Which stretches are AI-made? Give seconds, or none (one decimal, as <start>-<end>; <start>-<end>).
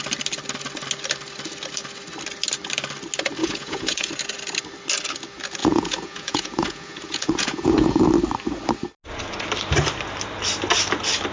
3.4-4.1; 5.6-8.0